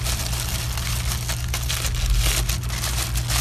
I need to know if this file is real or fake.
real